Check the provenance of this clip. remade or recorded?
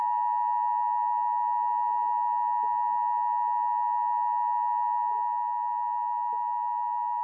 recorded